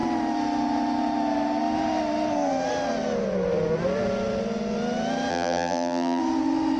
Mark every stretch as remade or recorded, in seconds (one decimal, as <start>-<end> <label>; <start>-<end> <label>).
0.0-5.3 recorded; 5.3-6.2 remade; 6.2-6.8 recorded